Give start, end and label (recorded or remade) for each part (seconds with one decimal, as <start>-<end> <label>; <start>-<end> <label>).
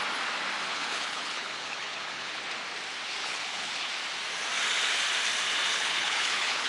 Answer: 0.0-0.7 recorded; 0.7-2.4 remade; 2.4-3.2 recorded; 3.2-3.9 remade; 3.9-5.7 recorded; 5.7-6.7 remade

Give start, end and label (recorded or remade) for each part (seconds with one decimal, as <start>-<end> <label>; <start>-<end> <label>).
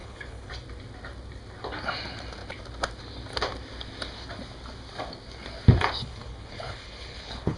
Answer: 0.0-0.5 remade; 0.5-6.0 recorded; 6.0-7.6 remade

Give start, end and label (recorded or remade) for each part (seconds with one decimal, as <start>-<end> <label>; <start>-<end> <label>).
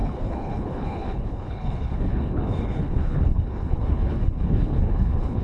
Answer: 0.0-5.4 remade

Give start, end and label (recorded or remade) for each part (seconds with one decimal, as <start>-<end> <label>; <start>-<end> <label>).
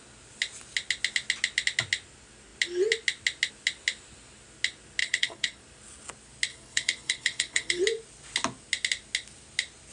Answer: 0.0-5.0 recorded; 5.0-5.6 remade; 5.6-6.5 recorded; 6.5-7.8 remade; 7.8-9.9 recorded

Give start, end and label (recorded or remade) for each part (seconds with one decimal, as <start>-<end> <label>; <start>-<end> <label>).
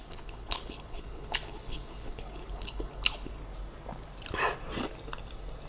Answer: 0.0-3.3 remade; 3.3-5.7 recorded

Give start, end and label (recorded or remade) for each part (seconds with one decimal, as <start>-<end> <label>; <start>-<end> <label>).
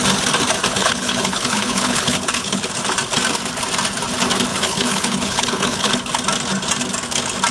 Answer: 0.0-0.7 recorded; 0.7-2.6 remade; 2.6-4.5 recorded; 4.5-5.9 remade; 5.9-7.5 recorded